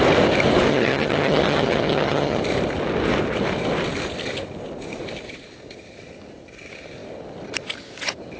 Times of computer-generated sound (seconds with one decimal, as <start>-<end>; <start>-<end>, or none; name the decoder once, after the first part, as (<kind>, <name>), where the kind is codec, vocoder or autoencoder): 0.7-2.4 (vocoder, HiFi-GAN)